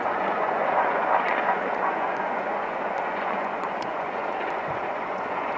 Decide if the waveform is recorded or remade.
remade